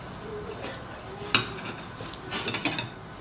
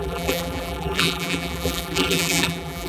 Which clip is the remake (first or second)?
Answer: second